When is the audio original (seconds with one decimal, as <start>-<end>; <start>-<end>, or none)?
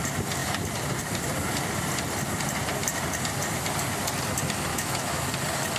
0.0-4.7; 5.3-5.8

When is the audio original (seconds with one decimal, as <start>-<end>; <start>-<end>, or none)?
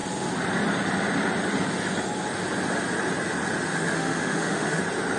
0.0-3.7; 4.8-5.2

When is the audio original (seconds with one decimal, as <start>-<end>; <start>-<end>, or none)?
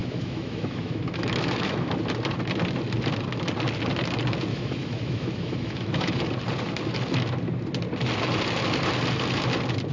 1.9-4.5; 6.2-9.9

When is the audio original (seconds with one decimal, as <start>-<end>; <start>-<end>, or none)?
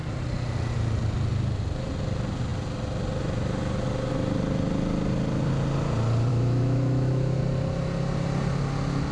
0.0-6.3; 7.4-9.1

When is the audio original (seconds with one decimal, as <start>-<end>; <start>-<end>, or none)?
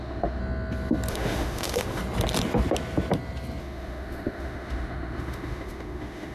0.4-1.1; 2.0-3.6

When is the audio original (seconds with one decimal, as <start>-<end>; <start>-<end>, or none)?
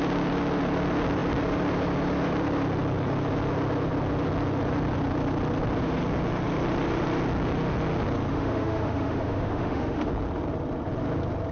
0.0-8.3; 10.1-11.5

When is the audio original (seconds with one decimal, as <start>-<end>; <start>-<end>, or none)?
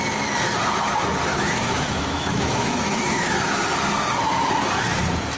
0.0-1.3; 3.6-5.4